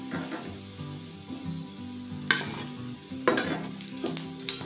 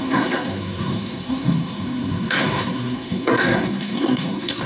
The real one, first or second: first